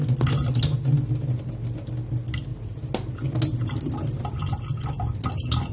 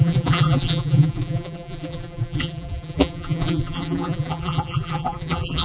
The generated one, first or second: second